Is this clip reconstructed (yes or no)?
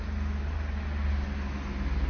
no